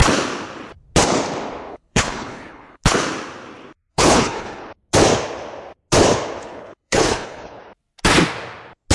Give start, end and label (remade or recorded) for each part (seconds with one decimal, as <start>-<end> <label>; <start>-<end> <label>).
0.0-1.7 recorded; 1.7-2.8 remade; 2.8-3.9 recorded; 3.9-4.7 remade; 4.7-6.4 recorded; 6.4-7.6 remade; 7.6-8.9 recorded